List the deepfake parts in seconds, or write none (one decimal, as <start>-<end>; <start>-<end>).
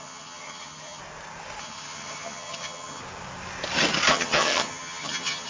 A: 0.0-1.0; 1.6-3.0; 4.1-5.5